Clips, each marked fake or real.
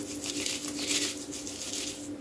real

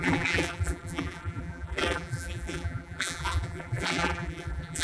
fake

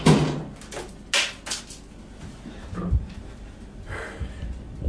real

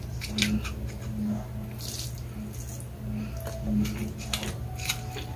real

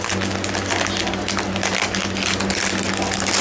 real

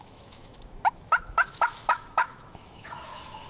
fake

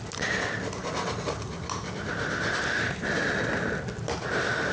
real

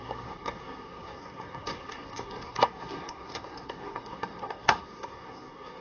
fake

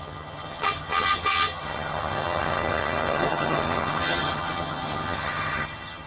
fake